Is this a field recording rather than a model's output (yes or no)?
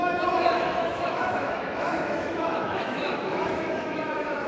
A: no